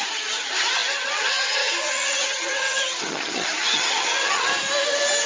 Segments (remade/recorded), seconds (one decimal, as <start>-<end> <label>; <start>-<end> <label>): 0.0-4.5 remade; 4.5-5.3 recorded